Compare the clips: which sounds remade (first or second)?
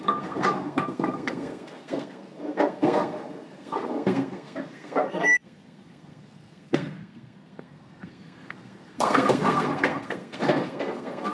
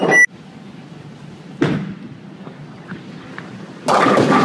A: first